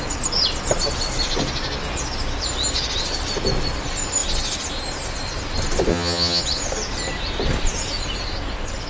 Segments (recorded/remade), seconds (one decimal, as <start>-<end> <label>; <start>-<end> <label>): 0.0-5.9 recorded; 5.9-6.4 remade; 6.4-8.9 recorded

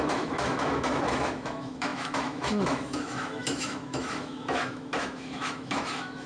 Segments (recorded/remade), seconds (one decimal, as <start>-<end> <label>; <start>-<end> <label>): 0.0-6.3 remade

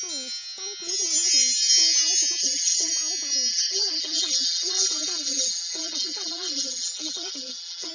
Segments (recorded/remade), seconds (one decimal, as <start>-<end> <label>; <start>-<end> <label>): 0.0-2.4 recorded; 2.4-2.9 remade; 2.9-3.5 recorded; 3.5-7.9 remade

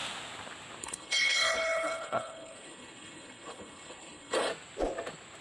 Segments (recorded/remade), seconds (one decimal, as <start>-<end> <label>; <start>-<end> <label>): 0.0-0.8 recorded; 0.8-4.5 remade; 4.5-5.4 recorded

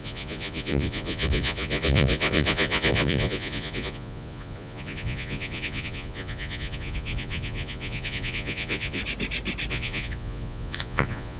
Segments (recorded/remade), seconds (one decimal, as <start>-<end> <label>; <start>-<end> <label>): 0.0-9.0 remade; 9.0-9.7 recorded; 9.7-11.4 remade

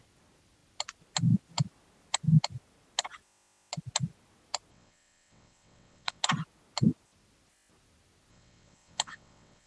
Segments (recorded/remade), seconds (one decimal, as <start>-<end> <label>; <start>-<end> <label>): 0.0-4.7 recorded; 4.7-6.2 remade; 6.2-8.3 recorded; 8.3-9.7 remade

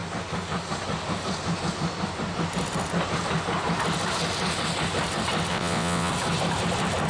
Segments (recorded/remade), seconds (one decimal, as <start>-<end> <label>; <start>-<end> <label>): 0.0-5.5 recorded; 5.5-6.1 remade; 6.1-7.1 recorded